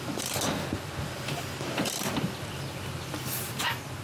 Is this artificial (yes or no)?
no